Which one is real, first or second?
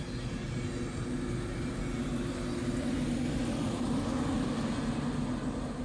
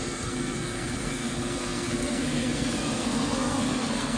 first